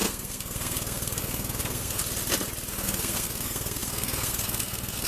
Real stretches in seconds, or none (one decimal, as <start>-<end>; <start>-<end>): 2.0-2.7